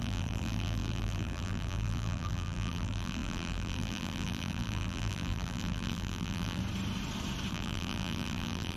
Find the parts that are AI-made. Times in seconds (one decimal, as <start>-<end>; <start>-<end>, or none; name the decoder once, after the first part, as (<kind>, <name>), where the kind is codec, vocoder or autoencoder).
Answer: 0.0-6.6 (vocoder, BigVGAN v2); 7.5-8.8

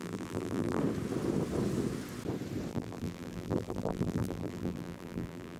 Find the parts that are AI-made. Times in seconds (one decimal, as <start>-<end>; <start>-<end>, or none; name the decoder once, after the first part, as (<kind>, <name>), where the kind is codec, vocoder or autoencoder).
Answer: 0.0-0.8 (vocoder, BigVGAN v2); 2.7-5.6

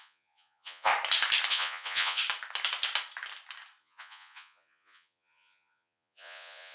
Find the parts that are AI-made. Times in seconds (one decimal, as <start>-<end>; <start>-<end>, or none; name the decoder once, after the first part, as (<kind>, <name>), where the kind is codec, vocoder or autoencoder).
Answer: 0.0-0.9 (vocoder, Vocos); 1.5-2.2; 3.8-6.7